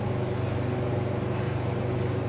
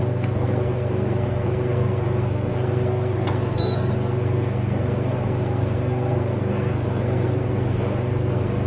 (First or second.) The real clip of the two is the first